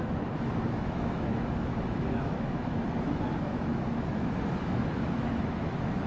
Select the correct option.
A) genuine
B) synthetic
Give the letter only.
B